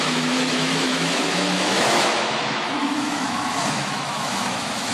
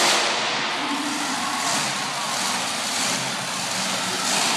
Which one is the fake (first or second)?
first